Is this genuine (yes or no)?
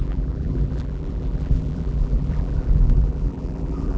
no